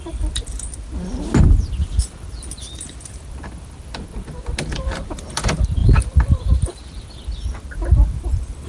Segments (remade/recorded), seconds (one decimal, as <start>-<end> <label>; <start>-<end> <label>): 0.0-8.7 remade